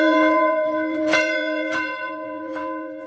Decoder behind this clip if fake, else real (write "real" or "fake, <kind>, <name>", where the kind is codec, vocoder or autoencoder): fake, vocoder, Vocos